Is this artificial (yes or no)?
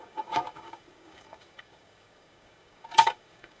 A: yes